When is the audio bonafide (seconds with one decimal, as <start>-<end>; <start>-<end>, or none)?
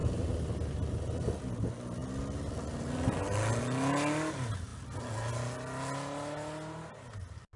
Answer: 0.0-7.6